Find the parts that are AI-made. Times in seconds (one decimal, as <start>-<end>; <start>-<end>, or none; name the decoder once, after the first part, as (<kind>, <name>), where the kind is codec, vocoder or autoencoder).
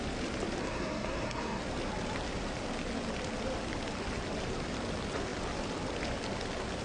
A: 0.6-1.6 (codec, SNAC)